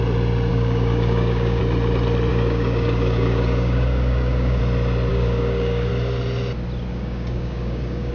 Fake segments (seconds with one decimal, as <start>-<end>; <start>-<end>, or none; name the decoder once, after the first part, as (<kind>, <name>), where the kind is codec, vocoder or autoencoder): 0.5-1.6 (codec, DAC); 2.3-4.6; 5.1-5.9; 6.9-8.1